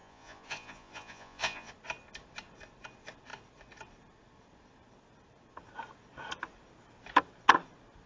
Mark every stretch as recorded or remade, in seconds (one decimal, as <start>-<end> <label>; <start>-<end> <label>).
0.0-1.7 remade; 1.7-8.1 recorded

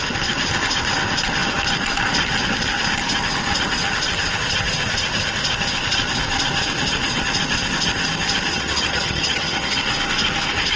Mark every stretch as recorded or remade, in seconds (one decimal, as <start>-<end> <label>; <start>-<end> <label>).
0.0-8.5 recorded; 8.5-9.8 remade; 9.8-10.8 recorded

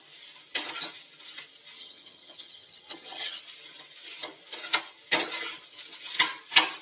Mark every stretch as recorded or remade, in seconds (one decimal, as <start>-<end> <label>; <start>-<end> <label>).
0.0-1.8 recorded; 1.8-3.4 remade; 3.4-6.8 recorded

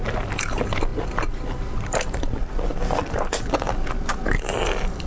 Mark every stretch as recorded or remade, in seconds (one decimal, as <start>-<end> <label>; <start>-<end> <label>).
0.0-0.9 recorded; 0.9-2.2 remade; 2.2-2.7 recorded; 2.7-5.1 remade

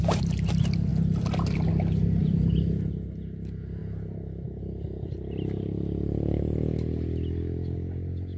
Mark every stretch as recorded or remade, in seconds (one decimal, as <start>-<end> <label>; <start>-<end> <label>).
0.0-0.9 recorded; 0.9-1.7 remade; 1.7-2.2 recorded; 2.2-2.9 remade; 2.9-8.4 recorded

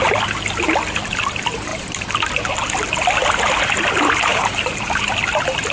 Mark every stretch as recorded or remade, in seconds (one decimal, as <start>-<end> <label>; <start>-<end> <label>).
0.0-1.7 recorded; 1.7-2.3 remade; 2.3-4.3 recorded; 4.3-5.0 remade; 5.0-5.7 recorded

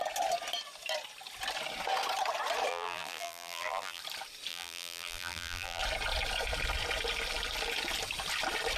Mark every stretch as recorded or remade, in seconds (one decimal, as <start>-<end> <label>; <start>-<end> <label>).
0.0-2.7 recorded; 2.7-4.0 remade; 4.0-4.5 recorded; 4.5-5.8 remade; 5.8-8.8 recorded